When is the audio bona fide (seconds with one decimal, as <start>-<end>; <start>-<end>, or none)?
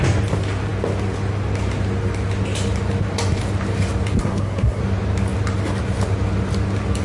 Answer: 0.0-4.2; 4.8-7.0